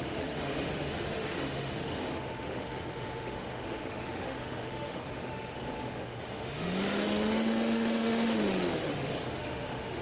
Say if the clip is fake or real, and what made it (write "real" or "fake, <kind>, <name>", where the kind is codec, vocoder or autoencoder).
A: fake, autoencoder, DAC-VAE